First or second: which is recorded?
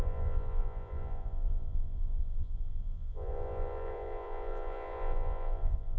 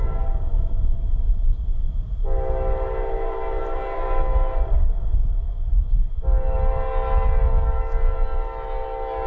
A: second